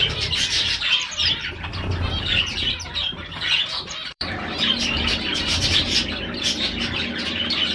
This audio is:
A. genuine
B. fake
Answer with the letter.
B